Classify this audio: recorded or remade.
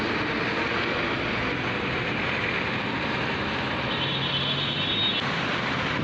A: recorded